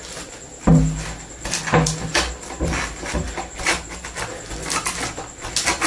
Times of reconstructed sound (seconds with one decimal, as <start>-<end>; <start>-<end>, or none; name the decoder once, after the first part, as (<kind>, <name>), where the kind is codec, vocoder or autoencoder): none